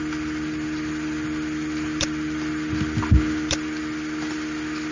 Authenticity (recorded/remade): recorded